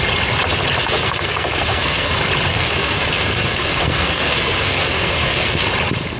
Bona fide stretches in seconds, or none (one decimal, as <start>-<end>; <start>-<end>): 0.0-0.8; 2.1-2.5; 5.6-6.2